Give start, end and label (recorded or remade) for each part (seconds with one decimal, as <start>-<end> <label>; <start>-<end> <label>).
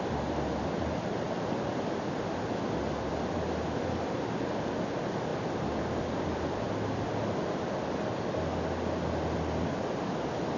0.0-10.6 recorded